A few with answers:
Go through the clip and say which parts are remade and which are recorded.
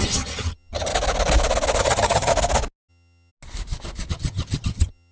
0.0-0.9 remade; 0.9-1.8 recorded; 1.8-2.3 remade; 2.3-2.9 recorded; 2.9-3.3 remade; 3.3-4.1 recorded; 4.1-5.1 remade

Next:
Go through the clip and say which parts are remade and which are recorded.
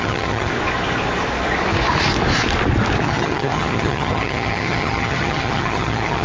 0.0-0.5 remade; 0.5-3.0 recorded; 3.0-6.2 remade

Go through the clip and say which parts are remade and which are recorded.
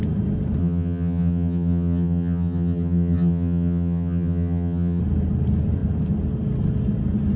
0.0-0.6 recorded; 0.6-5.0 remade; 5.0-7.4 recorded